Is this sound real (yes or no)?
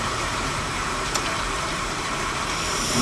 no